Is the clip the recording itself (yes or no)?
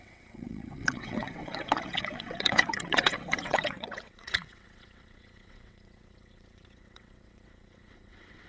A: no